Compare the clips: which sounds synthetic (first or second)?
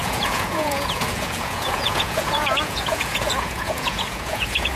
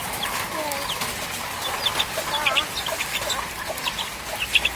first